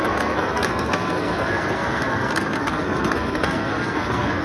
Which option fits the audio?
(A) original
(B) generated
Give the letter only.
B